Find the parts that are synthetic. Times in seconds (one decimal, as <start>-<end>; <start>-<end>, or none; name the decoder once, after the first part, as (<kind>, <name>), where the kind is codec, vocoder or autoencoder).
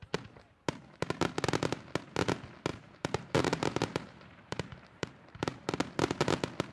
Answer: 2.7-5.7 (vocoder, BigVGAN v2)